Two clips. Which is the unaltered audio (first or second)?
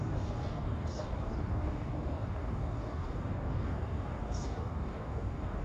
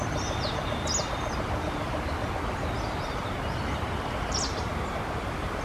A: second